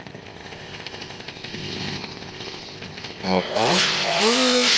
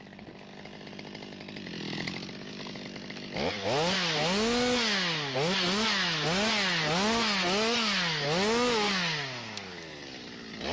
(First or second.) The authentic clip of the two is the second